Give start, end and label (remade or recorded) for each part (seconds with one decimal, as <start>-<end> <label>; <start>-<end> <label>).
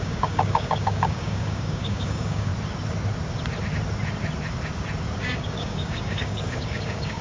0.0-2.5 remade; 2.5-5.2 recorded; 5.2-7.2 remade